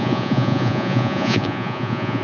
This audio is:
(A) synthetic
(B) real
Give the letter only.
A